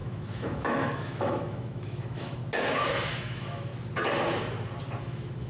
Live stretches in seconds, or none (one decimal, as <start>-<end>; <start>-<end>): 2.4-3.1; 3.7-5.0